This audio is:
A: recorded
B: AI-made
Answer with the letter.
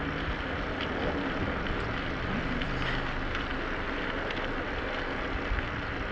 A